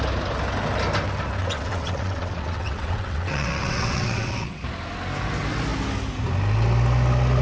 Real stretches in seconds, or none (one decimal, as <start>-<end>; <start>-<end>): 0.0-1.4; 4.6-7.4